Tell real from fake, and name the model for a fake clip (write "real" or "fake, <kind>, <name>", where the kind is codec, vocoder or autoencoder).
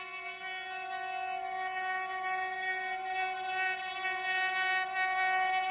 real